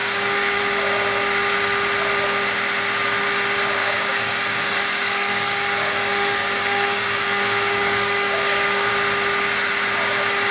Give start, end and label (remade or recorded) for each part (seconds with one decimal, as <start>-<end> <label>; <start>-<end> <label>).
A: 0.0-0.6 remade; 0.6-3.8 recorded; 3.8-8.9 remade; 8.9-10.5 recorded